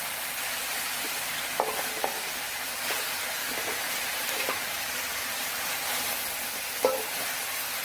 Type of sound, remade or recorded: recorded